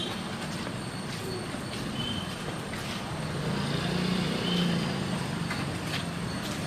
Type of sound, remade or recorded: recorded